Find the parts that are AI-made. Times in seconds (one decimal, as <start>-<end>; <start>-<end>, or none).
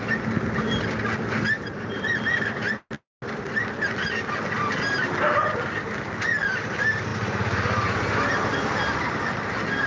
none